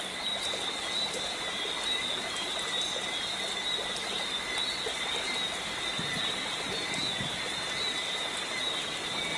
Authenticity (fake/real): real